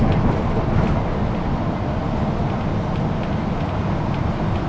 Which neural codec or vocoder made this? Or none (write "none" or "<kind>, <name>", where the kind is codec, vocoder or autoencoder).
none